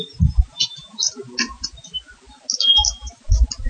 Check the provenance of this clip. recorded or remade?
recorded